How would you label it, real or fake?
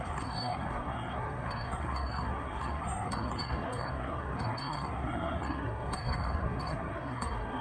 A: fake